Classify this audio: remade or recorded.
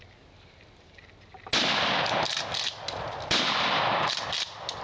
recorded